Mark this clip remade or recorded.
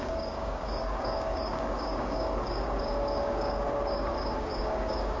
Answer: remade